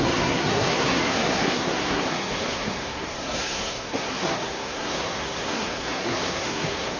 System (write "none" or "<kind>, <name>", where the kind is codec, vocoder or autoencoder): codec, SNAC